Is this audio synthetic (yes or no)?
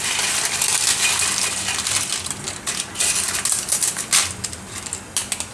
no